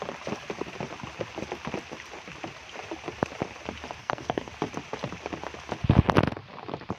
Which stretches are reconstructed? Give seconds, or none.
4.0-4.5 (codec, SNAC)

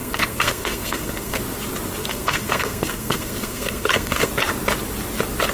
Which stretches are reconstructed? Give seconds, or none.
0.0-1.4 (codec, SNAC); 2.0-4.3

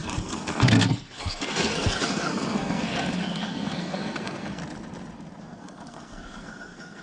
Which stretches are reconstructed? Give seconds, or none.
0.0-4.6 (codec, SNAC); 5.4-7.0

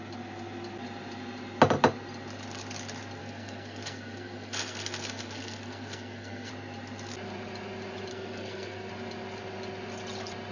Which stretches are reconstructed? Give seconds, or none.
3.2-6.5 (codec, SNAC); 8.1-8.9

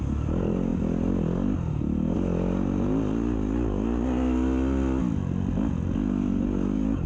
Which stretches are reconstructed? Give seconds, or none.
none

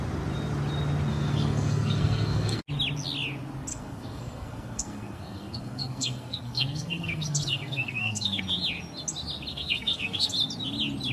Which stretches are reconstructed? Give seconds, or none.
1.1-2.6 (codec, SNAC); 3.7-8.4; 9.5-10.3